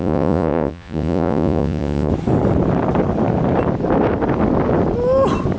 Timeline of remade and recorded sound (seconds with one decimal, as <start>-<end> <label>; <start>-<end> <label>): 0.0-2.1 remade; 2.1-5.6 recorded